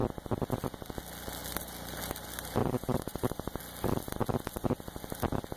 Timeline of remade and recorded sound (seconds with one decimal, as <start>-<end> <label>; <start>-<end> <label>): 0.0-2.6 recorded; 2.6-3.6 remade; 3.6-5.6 recorded